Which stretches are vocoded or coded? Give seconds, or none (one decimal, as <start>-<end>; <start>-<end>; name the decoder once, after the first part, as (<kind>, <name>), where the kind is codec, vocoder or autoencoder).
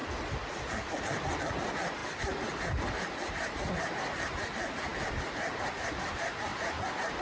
none